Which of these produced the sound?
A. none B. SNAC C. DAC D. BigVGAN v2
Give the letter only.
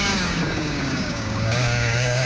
C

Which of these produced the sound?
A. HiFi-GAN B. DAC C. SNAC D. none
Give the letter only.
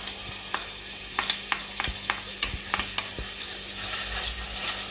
D